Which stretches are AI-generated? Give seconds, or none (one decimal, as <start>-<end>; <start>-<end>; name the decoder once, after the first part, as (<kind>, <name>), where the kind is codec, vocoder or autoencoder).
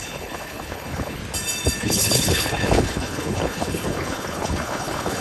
0.0-1.2 (codec, HILCodec); 1.8-5.2